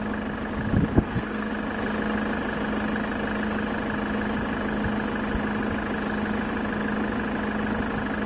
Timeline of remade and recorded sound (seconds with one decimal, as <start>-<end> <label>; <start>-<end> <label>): 0.0-0.9 recorded; 0.9-1.5 remade; 1.5-8.3 recorded

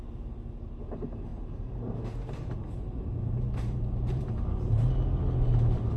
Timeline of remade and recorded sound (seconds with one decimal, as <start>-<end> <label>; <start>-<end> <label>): 0.0-1.3 recorded; 1.3-4.9 remade; 4.9-6.0 recorded

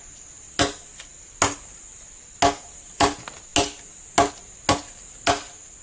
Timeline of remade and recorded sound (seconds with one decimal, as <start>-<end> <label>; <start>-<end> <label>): 0.0-5.8 recorded

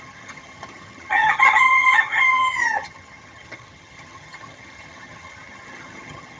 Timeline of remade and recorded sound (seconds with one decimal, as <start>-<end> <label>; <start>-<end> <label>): 0.0-6.4 remade

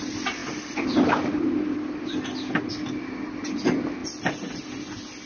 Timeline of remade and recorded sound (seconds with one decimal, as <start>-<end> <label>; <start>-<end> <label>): 0.0-5.3 recorded